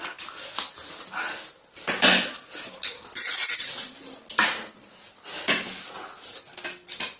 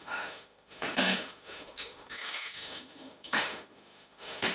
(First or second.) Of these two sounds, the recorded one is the first